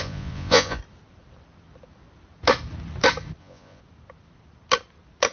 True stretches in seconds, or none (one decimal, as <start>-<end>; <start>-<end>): 0.8-3.4; 3.8-5.3